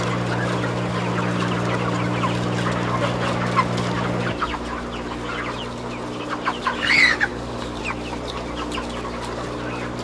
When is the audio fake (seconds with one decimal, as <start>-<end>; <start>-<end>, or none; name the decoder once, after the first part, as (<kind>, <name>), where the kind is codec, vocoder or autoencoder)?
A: 7.3-7.8 (codec, DAC)